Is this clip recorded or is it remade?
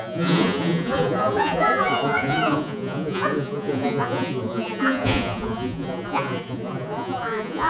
remade